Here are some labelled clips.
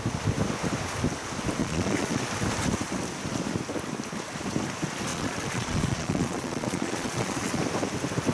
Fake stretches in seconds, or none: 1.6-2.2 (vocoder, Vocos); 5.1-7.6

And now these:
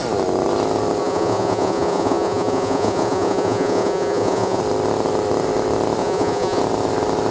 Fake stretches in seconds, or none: 1.0-4.6 (vocoder, Vocos); 6.0-6.6

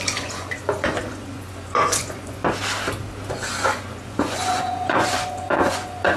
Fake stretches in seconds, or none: 0.0-2.4 (vocoder, Vocos); 3.3-6.2

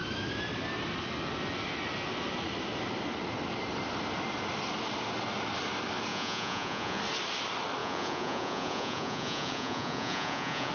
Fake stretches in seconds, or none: 6.1-7.0 (vocoder, Vocos); 7.8-10.7

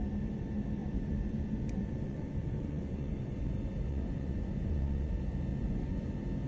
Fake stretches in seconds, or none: 0.8-3.5 (vocoder, Vocos); 3.9-5.1; 5.5-6.1

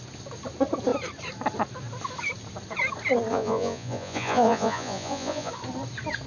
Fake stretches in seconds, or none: 3.3-5.5 (vocoder, Vocos)

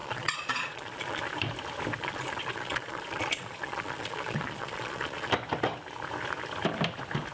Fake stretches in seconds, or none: 0.0-1.2 (vocoder, Vocos); 2.0-5.3